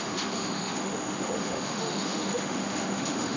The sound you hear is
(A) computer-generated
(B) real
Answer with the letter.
A